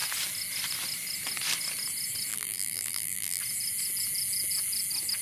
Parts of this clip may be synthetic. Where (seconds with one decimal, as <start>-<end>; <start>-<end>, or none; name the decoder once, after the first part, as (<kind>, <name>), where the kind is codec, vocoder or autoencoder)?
2.3-3.4 (vocoder, BigVGAN v2)